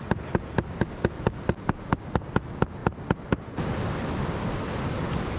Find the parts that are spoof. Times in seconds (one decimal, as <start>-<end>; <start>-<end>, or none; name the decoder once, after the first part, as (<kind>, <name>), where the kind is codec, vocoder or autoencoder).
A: none